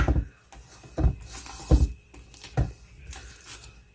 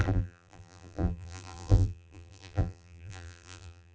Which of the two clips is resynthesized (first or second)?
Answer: second